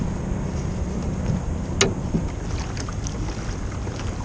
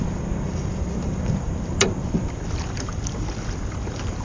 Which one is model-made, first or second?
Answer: second